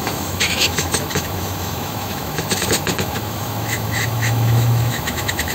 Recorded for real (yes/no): no